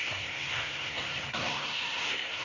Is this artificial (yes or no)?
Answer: yes